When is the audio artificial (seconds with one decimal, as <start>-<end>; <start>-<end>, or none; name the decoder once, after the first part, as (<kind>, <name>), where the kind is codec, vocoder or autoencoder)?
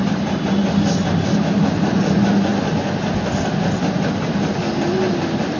none